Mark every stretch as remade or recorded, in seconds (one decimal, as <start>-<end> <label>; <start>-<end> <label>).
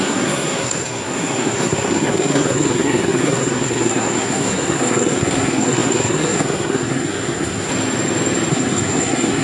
0.0-7.7 remade; 7.7-8.5 recorded; 8.5-9.4 remade